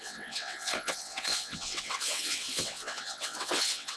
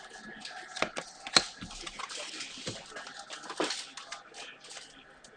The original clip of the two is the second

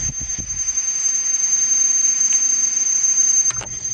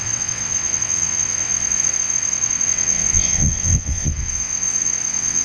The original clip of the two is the first